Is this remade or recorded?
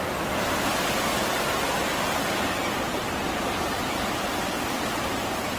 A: recorded